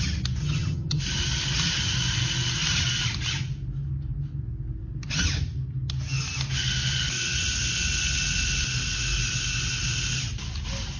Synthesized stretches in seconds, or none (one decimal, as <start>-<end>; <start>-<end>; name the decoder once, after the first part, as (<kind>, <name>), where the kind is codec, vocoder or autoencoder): 0.4-1.0 (vocoder, HiFi-GAN)